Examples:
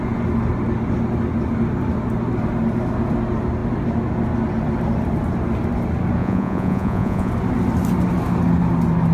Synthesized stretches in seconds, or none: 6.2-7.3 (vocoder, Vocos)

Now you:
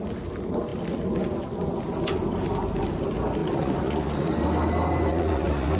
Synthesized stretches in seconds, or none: 3.4-4.3 (vocoder, Vocos); 5.1-5.8

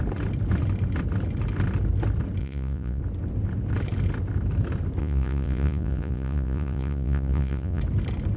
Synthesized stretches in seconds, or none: 2.4-3.0 (vocoder, Vocos); 5.0-7.8

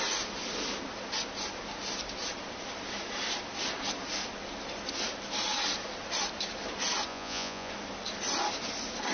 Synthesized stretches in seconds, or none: 7.1-7.7 (vocoder, Vocos)

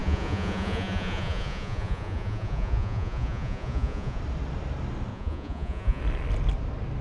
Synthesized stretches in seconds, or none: 0.0-4.2 (vocoder, Vocos); 5.1-6.0

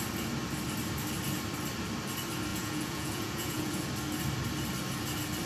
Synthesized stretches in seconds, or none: 2.5-3.8 (vocoder, Vocos)